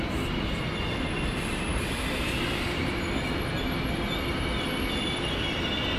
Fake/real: real